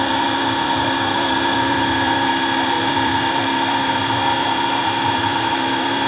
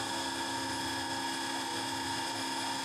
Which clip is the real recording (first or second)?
second